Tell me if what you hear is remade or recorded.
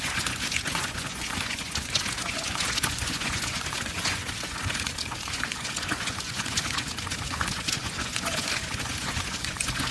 remade